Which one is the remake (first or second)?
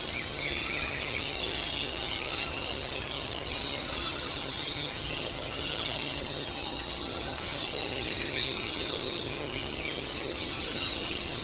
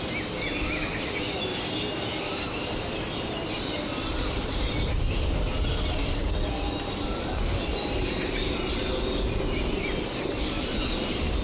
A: first